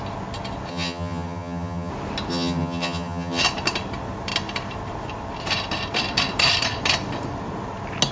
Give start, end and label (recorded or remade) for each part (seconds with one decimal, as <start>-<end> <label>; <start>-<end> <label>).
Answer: 0.0-0.7 recorded; 0.7-1.9 remade; 1.9-2.3 recorded; 2.3-3.4 remade; 3.4-8.1 recorded